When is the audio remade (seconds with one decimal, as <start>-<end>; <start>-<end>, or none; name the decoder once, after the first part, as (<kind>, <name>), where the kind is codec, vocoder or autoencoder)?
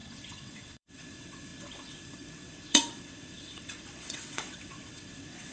0.0-5.5 (vocoder, WaveNeXt)